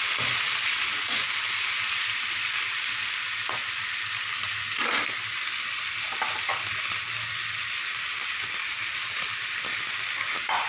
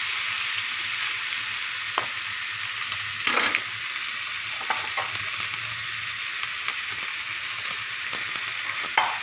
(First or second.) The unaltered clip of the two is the second